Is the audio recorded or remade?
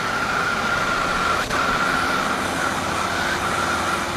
recorded